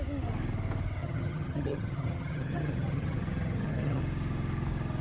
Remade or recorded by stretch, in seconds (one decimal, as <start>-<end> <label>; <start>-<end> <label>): 0.0-1.0 recorded; 1.0-4.0 remade; 4.0-5.0 recorded